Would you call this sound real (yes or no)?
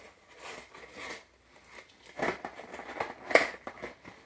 yes